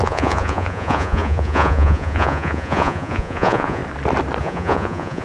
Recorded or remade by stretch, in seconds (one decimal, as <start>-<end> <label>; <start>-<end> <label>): 0.0-3.8 remade; 3.8-4.4 recorded; 4.4-5.2 remade